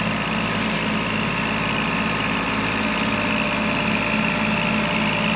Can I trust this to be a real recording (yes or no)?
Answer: yes